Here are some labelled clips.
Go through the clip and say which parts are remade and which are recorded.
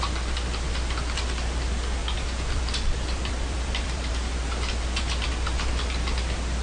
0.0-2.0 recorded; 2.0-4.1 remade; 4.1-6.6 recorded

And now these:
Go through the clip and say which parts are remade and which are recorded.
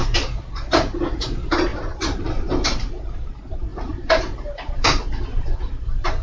0.0-6.2 remade